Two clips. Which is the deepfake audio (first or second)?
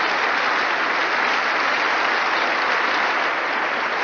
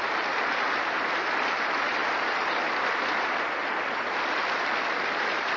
second